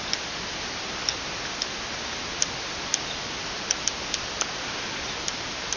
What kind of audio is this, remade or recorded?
recorded